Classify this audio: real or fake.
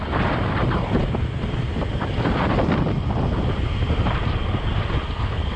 real